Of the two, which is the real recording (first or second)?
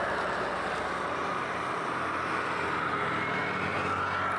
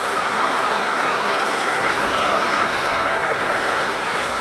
first